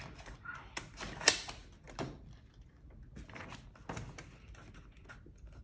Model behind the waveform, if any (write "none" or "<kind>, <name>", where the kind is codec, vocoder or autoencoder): none